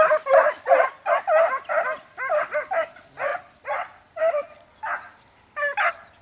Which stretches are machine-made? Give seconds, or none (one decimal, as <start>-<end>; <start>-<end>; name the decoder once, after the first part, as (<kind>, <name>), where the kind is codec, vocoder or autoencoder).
none